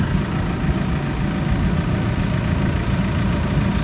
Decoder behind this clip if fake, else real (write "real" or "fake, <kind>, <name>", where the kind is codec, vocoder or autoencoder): real